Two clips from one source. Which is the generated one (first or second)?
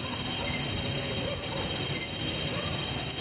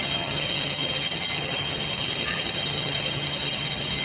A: second